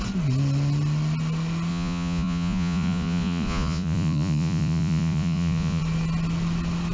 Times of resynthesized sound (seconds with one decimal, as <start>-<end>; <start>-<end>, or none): 1.7-5.8